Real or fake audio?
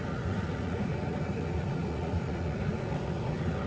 fake